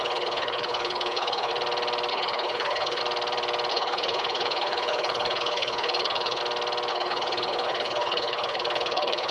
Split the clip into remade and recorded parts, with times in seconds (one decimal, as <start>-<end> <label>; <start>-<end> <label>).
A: 0.0-1.5 remade; 1.5-2.1 recorded; 2.1-3.0 remade; 3.0-3.7 recorded; 3.7-6.4 remade; 6.4-6.9 recorded; 6.9-9.3 remade